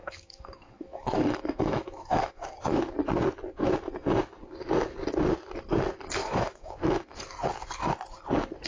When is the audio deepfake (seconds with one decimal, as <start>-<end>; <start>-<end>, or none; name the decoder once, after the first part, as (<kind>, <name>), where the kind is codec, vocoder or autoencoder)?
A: 0.0-2.8 (autoencoder, DAC-VAE); 6.2-7.2